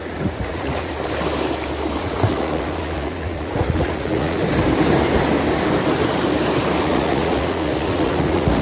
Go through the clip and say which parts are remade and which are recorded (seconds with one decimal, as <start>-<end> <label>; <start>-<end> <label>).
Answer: 0.0-0.9 remade; 0.9-2.0 recorded; 2.0-4.4 remade; 4.4-6.8 recorded; 6.8-8.6 remade